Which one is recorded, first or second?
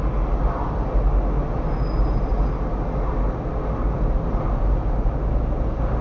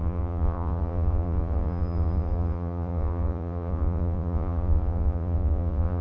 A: first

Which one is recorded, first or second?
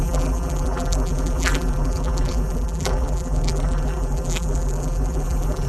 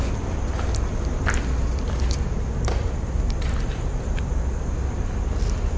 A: second